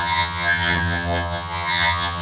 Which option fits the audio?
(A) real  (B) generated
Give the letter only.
B